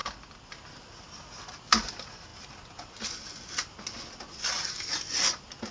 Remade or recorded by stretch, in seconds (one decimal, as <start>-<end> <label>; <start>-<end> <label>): 0.0-5.7 recorded